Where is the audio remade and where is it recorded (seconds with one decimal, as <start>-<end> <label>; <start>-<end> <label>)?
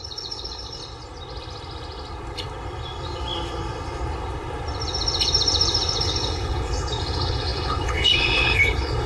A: 0.0-0.8 remade; 0.8-6.0 recorded; 6.0-9.1 remade